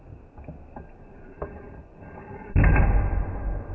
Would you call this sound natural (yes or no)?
yes